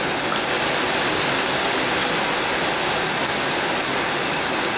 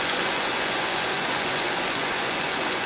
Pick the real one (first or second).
first